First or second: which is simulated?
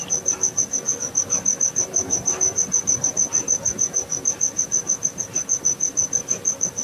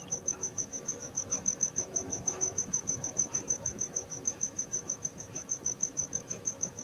second